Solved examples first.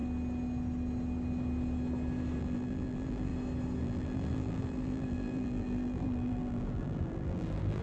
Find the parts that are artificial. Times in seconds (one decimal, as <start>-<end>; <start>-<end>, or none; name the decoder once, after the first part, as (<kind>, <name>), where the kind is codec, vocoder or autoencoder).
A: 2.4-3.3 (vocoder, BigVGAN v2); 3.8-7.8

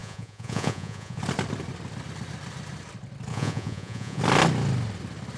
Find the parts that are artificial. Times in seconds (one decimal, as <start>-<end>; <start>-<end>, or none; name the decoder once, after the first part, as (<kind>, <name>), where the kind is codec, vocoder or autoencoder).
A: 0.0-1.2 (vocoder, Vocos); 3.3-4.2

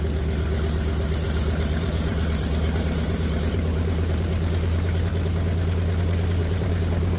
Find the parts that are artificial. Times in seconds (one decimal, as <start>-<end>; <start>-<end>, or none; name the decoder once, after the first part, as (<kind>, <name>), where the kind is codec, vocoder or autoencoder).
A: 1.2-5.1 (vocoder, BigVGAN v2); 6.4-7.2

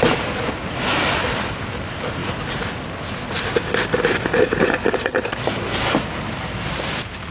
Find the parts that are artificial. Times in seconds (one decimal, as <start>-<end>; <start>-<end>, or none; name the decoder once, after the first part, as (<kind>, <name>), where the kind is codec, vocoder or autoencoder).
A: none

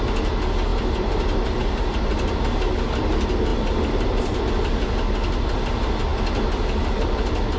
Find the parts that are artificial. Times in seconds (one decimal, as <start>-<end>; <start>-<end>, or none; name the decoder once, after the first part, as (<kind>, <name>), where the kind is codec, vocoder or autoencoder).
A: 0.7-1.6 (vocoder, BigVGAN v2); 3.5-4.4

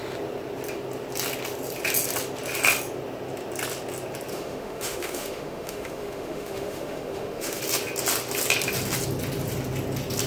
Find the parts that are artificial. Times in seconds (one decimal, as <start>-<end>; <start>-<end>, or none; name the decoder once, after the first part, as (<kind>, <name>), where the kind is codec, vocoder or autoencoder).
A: 4.3-7.6 (autoencoder, DAC-VAE)

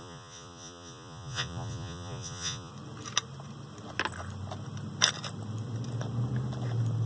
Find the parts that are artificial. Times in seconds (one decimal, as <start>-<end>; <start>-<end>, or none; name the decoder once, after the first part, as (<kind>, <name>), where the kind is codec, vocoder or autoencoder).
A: 0.0-2.7 (vocoder, Vocos)

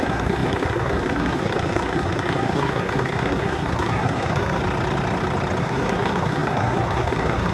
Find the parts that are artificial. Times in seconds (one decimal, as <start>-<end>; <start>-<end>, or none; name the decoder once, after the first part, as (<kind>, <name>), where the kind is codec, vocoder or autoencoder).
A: 0.0-4.6 (codec, SNAC); 5.6-7.5